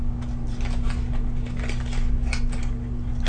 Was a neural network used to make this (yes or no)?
no